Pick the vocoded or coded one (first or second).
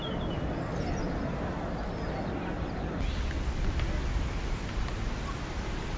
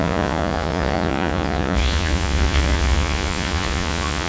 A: second